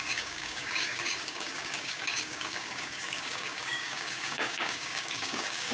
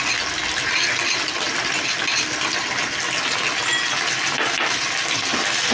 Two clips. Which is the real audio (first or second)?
second